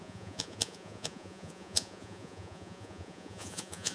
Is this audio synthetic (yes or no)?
yes